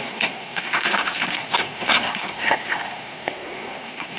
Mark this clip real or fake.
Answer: fake